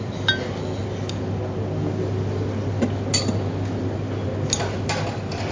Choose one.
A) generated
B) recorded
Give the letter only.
B